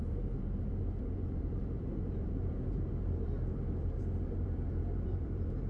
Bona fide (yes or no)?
no